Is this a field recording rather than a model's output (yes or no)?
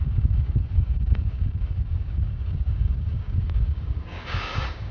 no